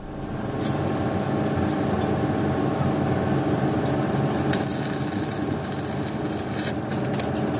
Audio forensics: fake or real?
real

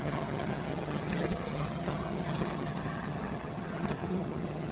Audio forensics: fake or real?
fake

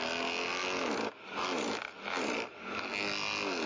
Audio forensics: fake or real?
real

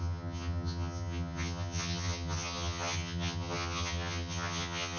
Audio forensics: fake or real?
fake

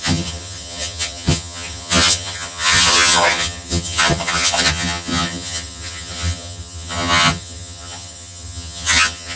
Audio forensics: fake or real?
fake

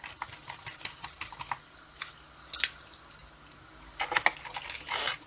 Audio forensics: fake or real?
real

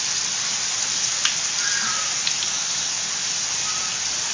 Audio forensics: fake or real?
real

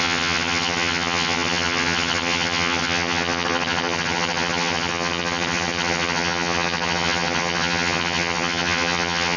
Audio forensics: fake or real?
fake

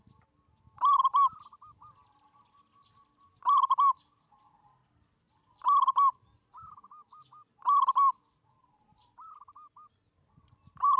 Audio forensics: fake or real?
real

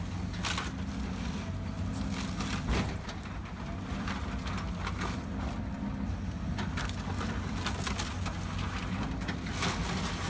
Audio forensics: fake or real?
real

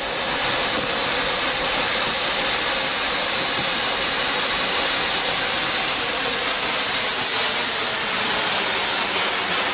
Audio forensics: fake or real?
real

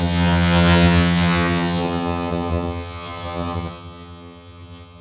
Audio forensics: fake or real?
fake